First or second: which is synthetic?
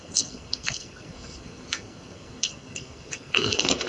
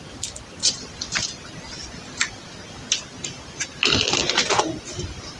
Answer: first